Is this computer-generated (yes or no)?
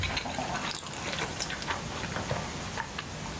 no